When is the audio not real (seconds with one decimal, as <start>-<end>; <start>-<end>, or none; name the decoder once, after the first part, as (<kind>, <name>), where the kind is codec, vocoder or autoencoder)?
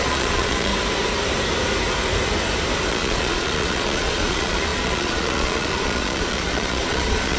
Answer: 0.0-0.7 (vocoder, Vocos); 2.9-7.4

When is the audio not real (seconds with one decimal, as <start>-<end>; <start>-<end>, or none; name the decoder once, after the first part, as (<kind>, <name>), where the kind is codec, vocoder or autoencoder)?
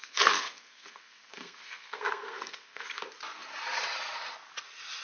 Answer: 0.0-3.0 (codec, SNAC)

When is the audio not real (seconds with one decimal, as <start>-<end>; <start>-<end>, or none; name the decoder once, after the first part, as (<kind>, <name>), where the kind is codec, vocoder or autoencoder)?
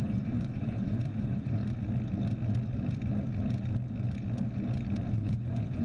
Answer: 0.0-1.6 (vocoder, Vocos); 5.1-5.8